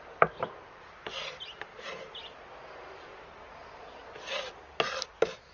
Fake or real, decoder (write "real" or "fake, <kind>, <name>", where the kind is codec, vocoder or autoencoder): real